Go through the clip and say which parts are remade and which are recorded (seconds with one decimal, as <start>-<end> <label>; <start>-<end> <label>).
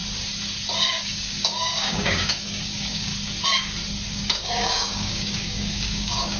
0.0-0.9 recorded; 0.9-3.1 remade; 3.1-4.1 recorded; 4.1-6.4 remade